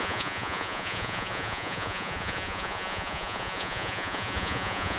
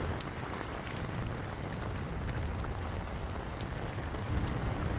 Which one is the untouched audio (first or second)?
second